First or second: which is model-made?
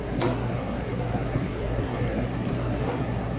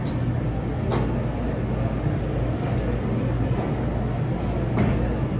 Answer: first